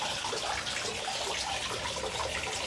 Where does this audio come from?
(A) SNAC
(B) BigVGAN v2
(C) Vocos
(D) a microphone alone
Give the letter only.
D